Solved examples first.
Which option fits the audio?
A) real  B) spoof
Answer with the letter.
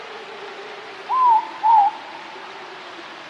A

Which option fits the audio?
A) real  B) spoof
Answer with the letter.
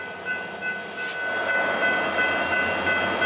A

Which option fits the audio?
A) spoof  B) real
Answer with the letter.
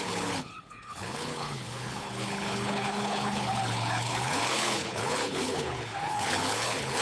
A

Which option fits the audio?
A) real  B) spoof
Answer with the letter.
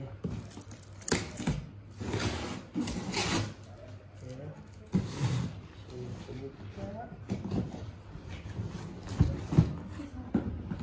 A